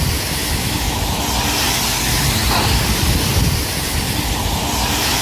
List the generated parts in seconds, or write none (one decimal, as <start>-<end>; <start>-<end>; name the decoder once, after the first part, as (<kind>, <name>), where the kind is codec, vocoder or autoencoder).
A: 0.4-1.2 (autoencoder, DAC-VAE)